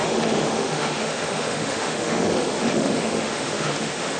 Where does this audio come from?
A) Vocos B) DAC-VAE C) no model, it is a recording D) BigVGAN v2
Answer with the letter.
B